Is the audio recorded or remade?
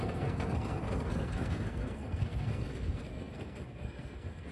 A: remade